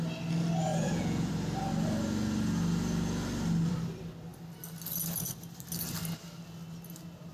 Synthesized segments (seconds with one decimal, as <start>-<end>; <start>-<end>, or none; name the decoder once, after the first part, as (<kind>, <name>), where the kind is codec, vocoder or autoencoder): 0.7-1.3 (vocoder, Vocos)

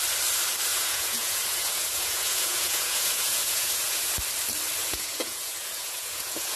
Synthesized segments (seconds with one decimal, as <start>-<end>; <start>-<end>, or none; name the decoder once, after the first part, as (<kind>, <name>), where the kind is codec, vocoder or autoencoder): 0.7-4.1 (vocoder, Vocos); 4.8-6.6

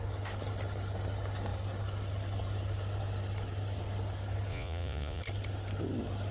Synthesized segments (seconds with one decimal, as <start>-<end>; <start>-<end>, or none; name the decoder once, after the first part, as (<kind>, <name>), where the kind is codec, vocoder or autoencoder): 4.5-5.2 (vocoder, Vocos)

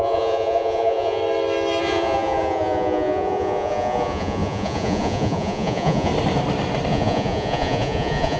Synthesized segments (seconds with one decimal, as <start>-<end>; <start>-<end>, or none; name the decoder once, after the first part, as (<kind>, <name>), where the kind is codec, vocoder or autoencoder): 0.0-1.2 (vocoder, Vocos); 1.8-6.1; 6.9-8.4

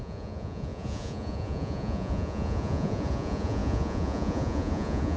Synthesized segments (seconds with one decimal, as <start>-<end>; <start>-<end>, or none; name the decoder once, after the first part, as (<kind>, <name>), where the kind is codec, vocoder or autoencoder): 0.0-5.2 (vocoder, Vocos)

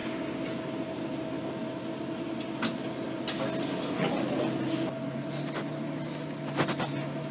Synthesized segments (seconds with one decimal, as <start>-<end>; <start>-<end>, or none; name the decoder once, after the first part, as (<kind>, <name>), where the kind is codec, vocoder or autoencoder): none

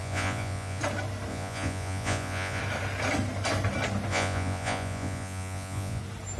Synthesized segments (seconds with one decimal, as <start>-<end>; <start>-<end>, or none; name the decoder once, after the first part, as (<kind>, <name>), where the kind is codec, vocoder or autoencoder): 0.0-0.8 (vocoder, Vocos); 1.3-2.6; 4.1-6.0

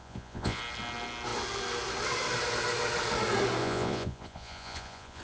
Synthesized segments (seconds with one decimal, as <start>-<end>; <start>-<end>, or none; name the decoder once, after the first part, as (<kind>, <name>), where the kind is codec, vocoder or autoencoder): 0.0-0.6 (vocoder, Vocos); 3.6-5.2